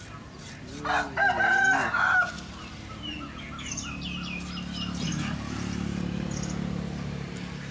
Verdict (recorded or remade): recorded